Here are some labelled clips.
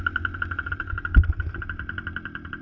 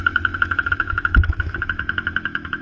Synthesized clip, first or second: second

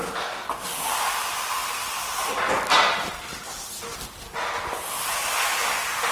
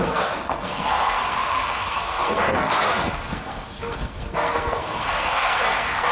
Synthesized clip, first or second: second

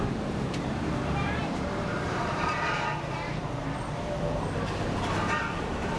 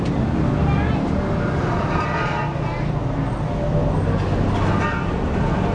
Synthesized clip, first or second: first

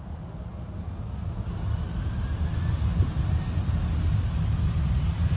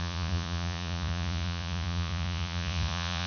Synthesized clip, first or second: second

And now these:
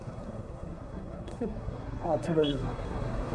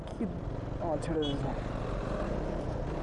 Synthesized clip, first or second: first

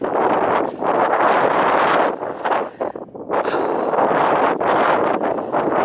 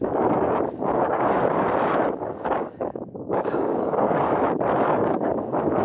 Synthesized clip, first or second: second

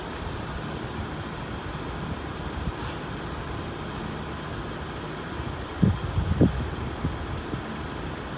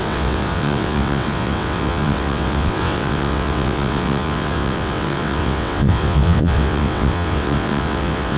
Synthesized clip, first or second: second